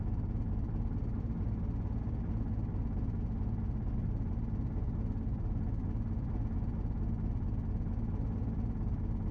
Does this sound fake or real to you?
real